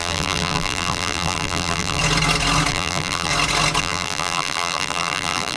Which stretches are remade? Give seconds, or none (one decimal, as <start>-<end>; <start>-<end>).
0.0-2.0; 2.7-3.3; 3.8-5.6